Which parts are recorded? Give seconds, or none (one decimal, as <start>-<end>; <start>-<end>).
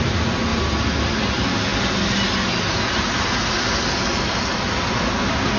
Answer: 0.0-5.6